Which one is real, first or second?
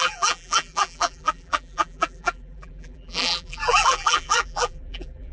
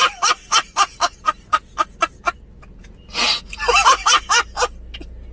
second